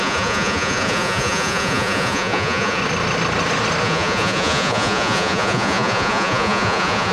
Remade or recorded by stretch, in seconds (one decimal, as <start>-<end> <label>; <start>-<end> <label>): 0.0-2.8 remade; 2.8-3.8 recorded; 3.8-7.1 remade